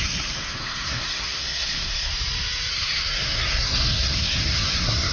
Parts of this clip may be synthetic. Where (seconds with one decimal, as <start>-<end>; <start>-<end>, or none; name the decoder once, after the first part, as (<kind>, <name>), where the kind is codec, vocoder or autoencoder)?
0.0-2.1 (codec, SNAC); 2.7-5.1